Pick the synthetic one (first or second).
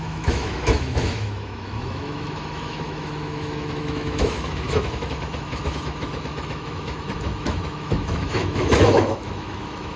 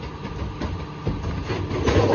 first